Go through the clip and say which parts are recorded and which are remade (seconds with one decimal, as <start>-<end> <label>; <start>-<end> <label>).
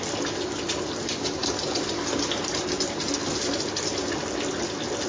0.0-5.1 recorded